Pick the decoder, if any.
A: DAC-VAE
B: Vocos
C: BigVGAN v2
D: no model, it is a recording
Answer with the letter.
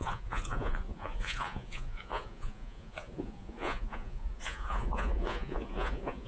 B